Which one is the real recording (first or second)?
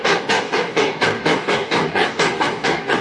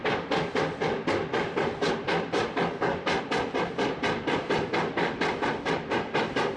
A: second